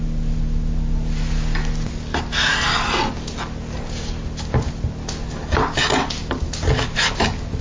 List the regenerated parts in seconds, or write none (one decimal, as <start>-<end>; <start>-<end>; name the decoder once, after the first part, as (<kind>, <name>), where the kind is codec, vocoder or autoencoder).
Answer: none